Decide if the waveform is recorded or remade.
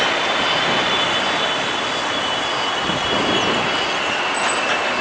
recorded